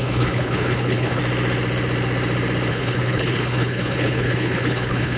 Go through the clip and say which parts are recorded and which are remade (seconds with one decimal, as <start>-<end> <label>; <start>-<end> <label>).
0.0-1.2 remade; 1.2-2.7 recorded; 2.7-5.2 remade